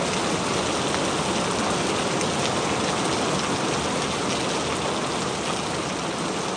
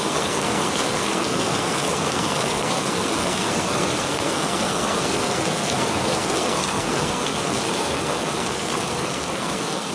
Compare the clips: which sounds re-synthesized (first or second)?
second